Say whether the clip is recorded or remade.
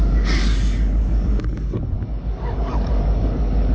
remade